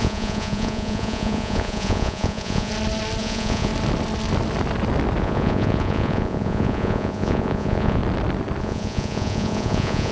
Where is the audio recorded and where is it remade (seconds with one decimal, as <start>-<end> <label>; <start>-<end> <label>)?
0.0-2.7 remade; 2.7-3.2 recorded; 3.2-3.7 remade; 3.7-5.2 recorded; 5.2-8.0 remade; 8.0-8.6 recorded; 8.6-10.1 remade